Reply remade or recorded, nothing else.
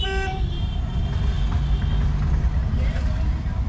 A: recorded